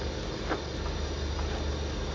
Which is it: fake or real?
real